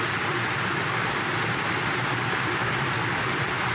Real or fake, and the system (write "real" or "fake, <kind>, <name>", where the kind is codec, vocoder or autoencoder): real